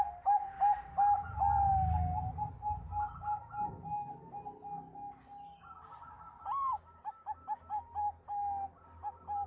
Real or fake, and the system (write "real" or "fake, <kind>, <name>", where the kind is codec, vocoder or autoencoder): real